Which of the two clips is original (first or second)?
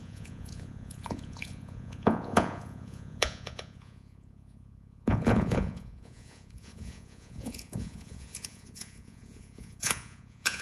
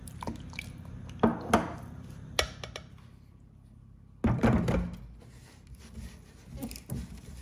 second